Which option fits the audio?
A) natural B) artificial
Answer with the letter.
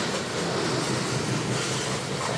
A